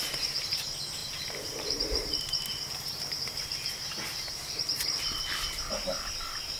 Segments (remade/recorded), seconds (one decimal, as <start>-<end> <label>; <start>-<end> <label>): 0.0-1.0 recorded; 1.0-5.0 remade; 5.0-6.6 recorded

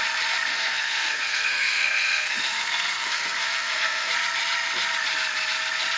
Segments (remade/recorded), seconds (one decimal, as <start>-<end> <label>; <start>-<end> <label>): 0.0-0.5 recorded; 0.5-4.1 remade; 4.1-6.0 recorded

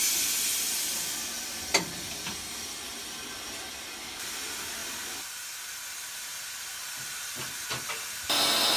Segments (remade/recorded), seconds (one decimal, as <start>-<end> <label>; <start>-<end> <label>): 0.0-8.8 recorded

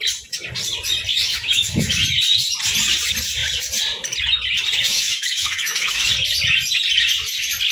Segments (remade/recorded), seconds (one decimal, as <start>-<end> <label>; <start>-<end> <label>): 0.0-1.1 recorded; 1.1-1.9 remade; 1.9-4.9 recorded; 4.9-6.1 remade; 6.1-7.7 recorded

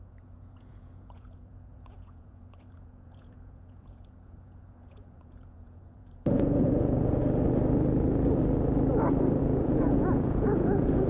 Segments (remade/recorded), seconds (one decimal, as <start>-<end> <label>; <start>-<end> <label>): 0.0-7.2 remade; 7.2-9.4 recorded; 9.4-11.1 remade

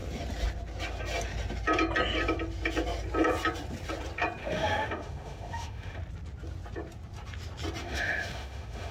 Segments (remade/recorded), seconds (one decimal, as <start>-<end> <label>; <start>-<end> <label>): 0.0-4.4 recorded; 4.4-6.0 remade; 6.0-7.8 recorded; 7.8-8.9 remade

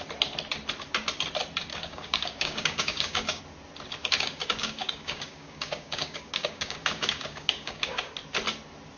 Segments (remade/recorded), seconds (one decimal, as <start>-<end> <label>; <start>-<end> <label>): 0.0-1.7 recorded; 1.7-3.4 remade; 3.4-4.0 recorded; 4.0-8.1 remade; 8.1-9.0 recorded